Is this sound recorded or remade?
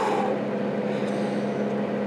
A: recorded